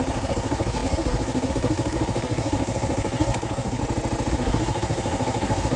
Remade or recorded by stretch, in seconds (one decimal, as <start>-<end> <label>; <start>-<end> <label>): 0.0-3.8 remade; 3.8-4.3 recorded; 4.3-5.8 remade